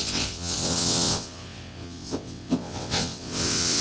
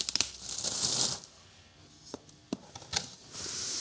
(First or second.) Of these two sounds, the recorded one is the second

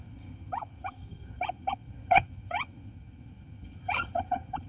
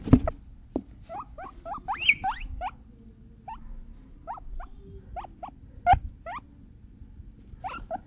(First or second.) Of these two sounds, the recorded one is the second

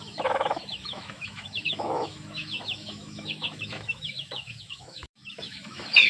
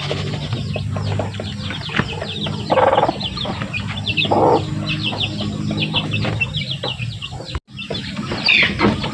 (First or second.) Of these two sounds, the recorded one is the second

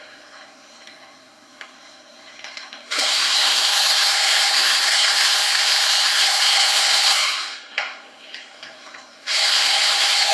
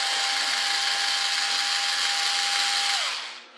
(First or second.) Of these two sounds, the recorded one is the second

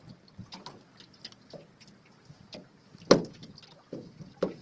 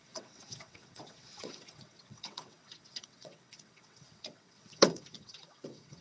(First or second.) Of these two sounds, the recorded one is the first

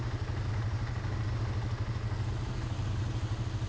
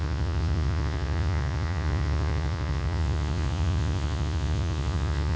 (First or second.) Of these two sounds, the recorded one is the first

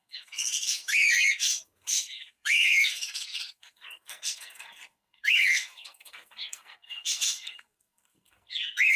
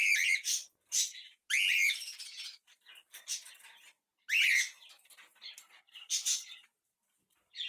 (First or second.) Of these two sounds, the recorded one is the second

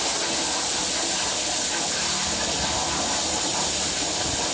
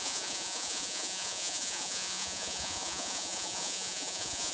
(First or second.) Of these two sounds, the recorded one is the first